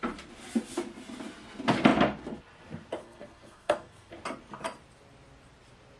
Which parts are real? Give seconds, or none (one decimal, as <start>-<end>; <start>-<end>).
0.0-3.0; 4.1-6.0